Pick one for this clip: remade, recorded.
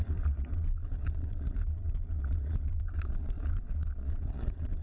remade